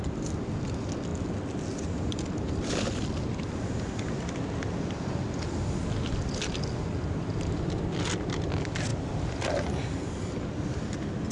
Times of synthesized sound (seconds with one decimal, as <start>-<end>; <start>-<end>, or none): none